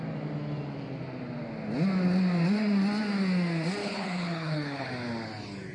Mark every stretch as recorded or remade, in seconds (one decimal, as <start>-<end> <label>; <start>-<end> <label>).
0.0-3.8 recorded; 3.8-4.9 remade; 4.9-5.7 recorded